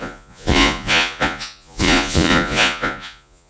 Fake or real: fake